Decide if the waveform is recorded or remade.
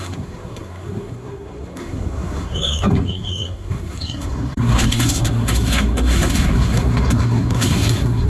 remade